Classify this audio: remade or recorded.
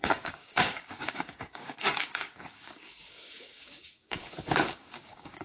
remade